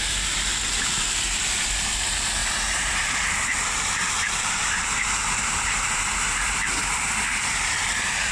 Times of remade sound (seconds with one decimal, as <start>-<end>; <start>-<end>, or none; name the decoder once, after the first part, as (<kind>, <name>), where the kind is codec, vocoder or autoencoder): 2.4-6.5 (vocoder, BigVGAN v2)